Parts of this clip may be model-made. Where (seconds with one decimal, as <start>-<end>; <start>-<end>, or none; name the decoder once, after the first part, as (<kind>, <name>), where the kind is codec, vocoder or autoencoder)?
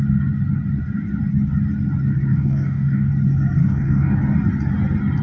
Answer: 2.3-3.1 (codec, DAC); 3.6-4.2